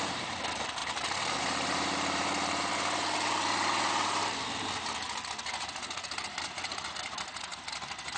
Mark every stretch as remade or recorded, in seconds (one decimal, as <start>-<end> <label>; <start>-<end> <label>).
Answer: 0.0-4.2 remade; 4.2-5.3 recorded; 5.3-8.2 remade